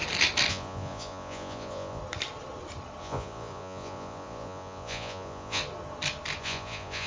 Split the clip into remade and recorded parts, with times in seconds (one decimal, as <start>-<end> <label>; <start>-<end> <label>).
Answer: 0.0-0.5 recorded; 0.5-2.0 remade; 2.0-3.0 recorded; 3.0-5.6 remade; 5.6-6.4 recorded; 6.4-7.1 remade